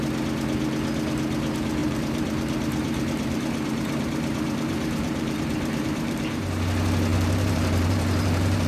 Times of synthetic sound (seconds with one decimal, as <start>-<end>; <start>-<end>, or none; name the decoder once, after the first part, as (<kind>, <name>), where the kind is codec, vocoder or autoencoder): 1.8-6.5 (vocoder, BigVGAN v2); 7.1-8.7